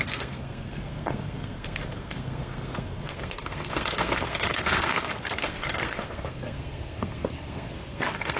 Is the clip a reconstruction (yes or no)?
yes